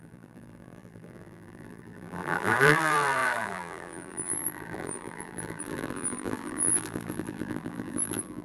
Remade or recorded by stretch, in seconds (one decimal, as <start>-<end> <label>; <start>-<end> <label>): 0.0-8.4 remade